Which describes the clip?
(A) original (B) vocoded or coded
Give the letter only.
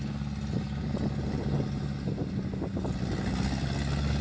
A